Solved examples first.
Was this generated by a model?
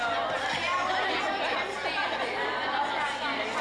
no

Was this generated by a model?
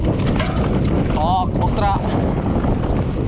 no